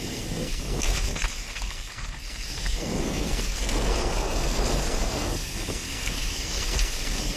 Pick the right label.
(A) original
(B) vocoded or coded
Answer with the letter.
B